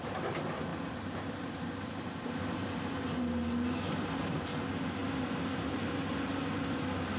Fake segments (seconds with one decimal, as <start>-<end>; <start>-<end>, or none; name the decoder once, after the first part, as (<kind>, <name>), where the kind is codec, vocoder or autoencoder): 0.7-1.9 (vocoder, BigVGAN v2)